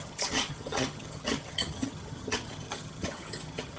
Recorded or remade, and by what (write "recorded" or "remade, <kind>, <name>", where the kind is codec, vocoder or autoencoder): remade, vocoder, HiFi-GAN